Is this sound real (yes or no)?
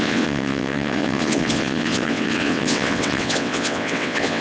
no